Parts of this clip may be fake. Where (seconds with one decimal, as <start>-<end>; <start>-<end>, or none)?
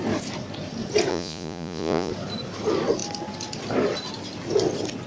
1.1-2.1